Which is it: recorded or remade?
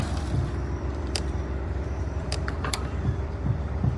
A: remade